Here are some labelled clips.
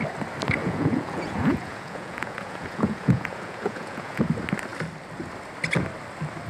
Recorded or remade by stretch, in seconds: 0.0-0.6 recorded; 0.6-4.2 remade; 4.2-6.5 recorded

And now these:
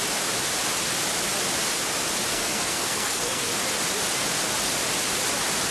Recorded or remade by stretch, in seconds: 0.0-2.3 recorded; 2.3-3.5 remade; 3.5-5.7 recorded

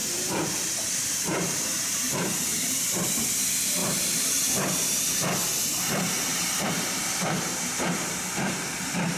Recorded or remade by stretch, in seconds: 0.0-2.8 remade; 2.8-3.8 recorded; 3.8-5.0 remade; 5.0-6.3 recorded; 6.3-8.7 remade; 8.7-9.2 recorded

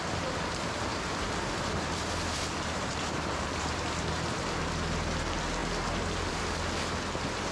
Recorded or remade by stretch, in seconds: 0.0-4.4 remade; 4.4-7.5 recorded